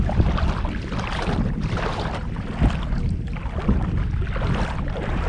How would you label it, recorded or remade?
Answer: recorded